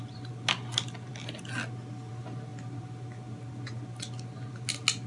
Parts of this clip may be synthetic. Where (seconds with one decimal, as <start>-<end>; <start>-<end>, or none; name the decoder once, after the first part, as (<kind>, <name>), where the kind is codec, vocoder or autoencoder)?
none